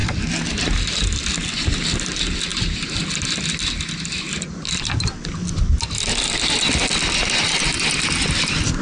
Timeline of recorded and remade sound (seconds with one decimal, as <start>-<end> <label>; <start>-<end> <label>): 0.0-8.8 recorded